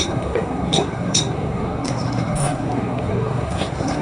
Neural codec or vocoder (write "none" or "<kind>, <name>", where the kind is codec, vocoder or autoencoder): codec, SNAC